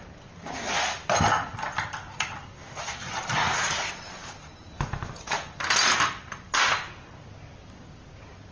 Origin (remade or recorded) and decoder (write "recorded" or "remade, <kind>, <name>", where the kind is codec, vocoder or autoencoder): recorded